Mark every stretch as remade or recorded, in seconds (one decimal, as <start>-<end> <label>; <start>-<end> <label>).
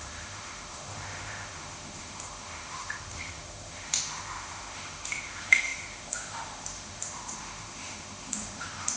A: 0.0-9.0 remade